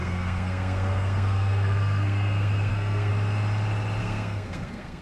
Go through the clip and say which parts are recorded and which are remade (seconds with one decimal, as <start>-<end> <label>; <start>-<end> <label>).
0.0-3.1 remade; 3.1-4.0 recorded; 4.0-5.0 remade